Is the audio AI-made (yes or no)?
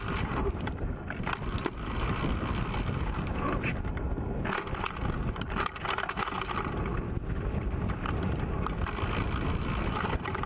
no